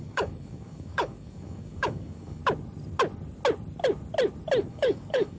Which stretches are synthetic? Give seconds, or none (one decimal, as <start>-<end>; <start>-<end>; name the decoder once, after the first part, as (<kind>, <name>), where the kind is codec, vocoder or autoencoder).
0.0-2.4 (codec, DAC); 4.7-5.4